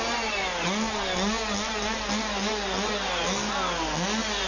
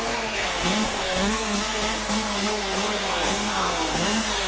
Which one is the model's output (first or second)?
second